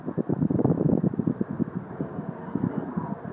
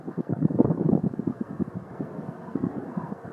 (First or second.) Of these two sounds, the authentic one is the first